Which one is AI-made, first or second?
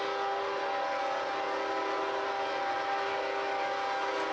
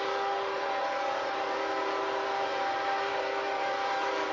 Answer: second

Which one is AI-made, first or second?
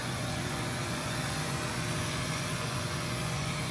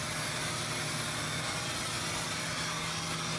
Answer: first